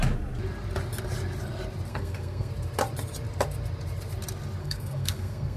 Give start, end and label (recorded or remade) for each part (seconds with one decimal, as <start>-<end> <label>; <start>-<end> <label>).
0.0-1.9 recorded; 1.9-2.5 remade; 2.5-4.6 recorded; 4.6-5.6 remade